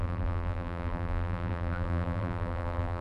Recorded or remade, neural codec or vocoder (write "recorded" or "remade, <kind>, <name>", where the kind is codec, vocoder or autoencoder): remade, vocoder, BigVGAN v2